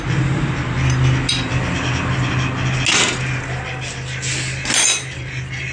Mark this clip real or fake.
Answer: real